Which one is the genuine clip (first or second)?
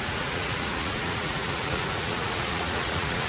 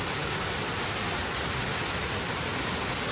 second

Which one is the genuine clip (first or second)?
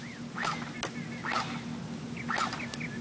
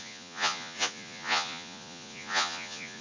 first